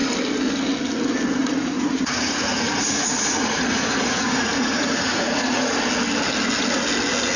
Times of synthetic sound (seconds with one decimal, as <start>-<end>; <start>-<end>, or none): 1.4-5.8